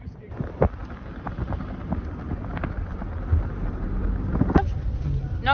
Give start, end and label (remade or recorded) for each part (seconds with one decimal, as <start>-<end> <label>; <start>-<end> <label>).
0.0-5.5 recorded